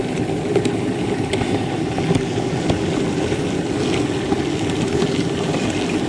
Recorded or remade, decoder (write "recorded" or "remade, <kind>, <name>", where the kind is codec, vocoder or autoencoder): recorded